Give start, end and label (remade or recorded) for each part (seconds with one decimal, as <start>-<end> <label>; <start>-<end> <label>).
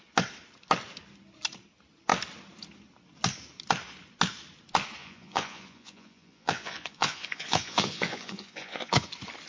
0.0-5.0 recorded; 5.0-9.1 remade; 9.1-9.5 recorded